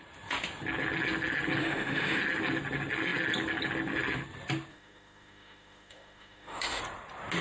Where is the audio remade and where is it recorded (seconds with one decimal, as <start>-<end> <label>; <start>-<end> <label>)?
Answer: 0.0-1.6 recorded; 1.6-2.2 remade; 2.2-4.7 recorded; 4.7-6.8 remade; 6.8-7.4 recorded